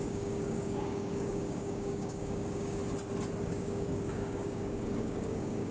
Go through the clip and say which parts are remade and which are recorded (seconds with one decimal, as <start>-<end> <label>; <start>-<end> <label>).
0.0-2.8 remade; 2.8-3.4 recorded; 3.4-5.7 remade